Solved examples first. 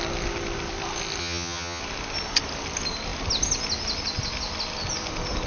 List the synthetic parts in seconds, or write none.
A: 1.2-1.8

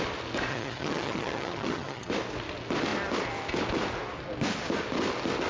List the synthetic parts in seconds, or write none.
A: 0.5-2.1